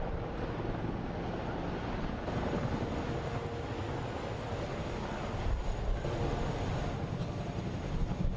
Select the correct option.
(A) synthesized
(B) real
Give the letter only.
B